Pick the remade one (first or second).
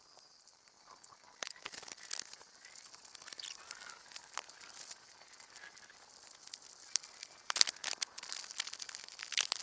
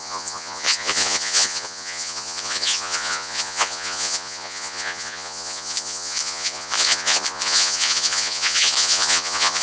second